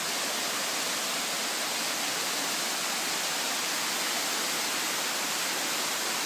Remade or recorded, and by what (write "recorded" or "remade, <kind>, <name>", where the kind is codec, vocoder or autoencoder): recorded